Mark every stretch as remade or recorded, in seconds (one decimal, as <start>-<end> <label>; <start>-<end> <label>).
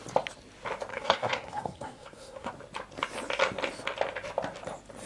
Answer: 0.0-0.9 recorded; 0.9-2.5 remade; 2.5-5.1 recorded